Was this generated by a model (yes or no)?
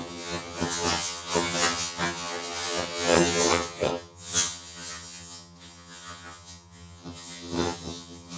yes